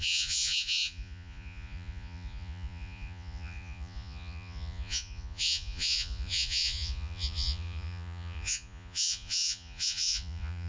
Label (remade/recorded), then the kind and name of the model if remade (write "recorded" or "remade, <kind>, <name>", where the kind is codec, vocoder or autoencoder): remade, vocoder, Vocos